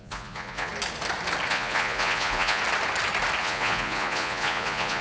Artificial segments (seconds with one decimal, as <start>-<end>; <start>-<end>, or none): 0.0-0.7; 1.5-2.6; 3.4-5.0